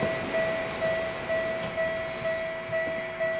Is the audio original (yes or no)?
yes